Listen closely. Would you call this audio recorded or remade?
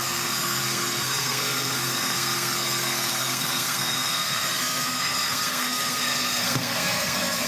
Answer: remade